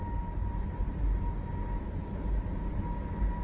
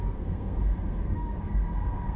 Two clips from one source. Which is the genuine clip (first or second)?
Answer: first